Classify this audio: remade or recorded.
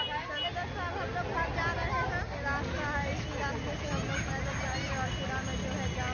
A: recorded